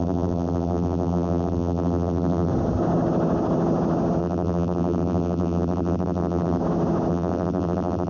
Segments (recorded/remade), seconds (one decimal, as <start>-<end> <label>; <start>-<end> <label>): 0.0-2.5 remade; 2.5-4.2 recorded; 4.2-6.6 remade; 6.6-7.1 recorded; 7.1-8.1 remade